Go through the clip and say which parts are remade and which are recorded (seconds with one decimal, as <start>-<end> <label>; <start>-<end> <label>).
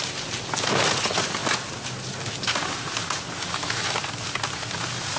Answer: 0.0-5.2 recorded